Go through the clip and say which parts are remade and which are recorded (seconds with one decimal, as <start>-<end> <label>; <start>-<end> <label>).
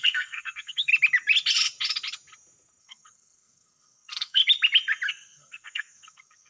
0.0-0.9 remade; 0.9-2.8 recorded; 2.8-4.4 remade; 4.4-5.1 recorded; 5.1-6.5 remade